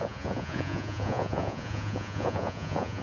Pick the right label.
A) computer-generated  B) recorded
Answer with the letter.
A